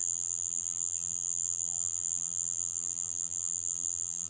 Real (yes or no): no